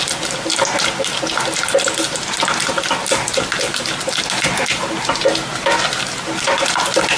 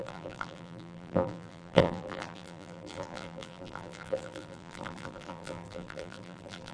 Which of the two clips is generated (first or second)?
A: second